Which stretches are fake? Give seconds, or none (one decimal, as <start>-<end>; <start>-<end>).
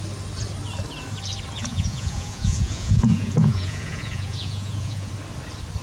1.6-5.1